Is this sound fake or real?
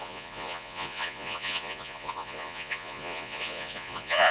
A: fake